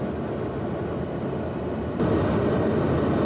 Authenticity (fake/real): real